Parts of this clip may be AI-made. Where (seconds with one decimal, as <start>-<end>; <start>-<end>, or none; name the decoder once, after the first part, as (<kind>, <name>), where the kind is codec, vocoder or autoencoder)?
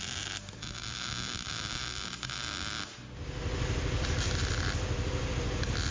none